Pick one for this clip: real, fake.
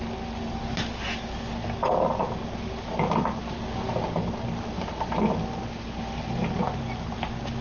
real